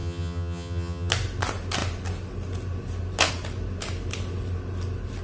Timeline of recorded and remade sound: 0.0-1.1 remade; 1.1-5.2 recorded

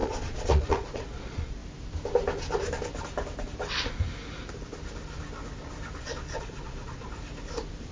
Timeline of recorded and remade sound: 0.0-1.6 remade; 1.6-6.0 recorded; 6.0-7.1 remade; 7.1-7.9 recorded

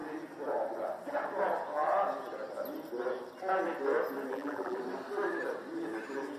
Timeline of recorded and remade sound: 0.0-4.3 recorded; 4.3-4.8 remade; 4.8-6.4 recorded